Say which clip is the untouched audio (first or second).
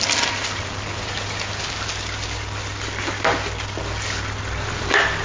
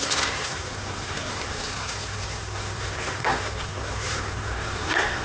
first